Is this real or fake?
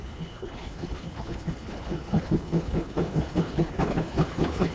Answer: fake